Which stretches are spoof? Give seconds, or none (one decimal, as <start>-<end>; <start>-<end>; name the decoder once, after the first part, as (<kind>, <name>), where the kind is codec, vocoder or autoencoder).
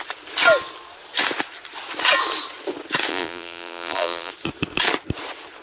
3.1-4.3 (vocoder, BigVGAN v2)